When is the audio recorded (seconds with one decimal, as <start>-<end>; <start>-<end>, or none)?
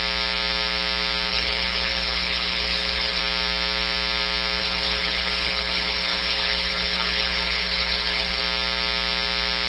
0.0-1.3; 3.2-4.6; 8.4-9.7